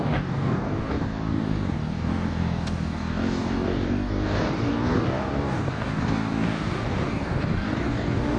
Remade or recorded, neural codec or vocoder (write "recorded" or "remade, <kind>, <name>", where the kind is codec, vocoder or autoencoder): remade, codec, DAC